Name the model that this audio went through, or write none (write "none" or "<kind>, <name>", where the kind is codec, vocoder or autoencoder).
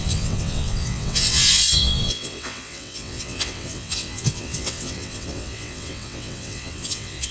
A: vocoder, WaveNeXt